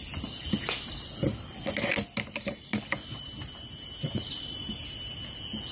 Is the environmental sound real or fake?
real